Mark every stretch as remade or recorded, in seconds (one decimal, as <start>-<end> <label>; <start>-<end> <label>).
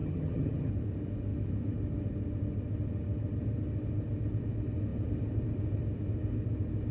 0.0-0.7 remade; 0.7-6.9 recorded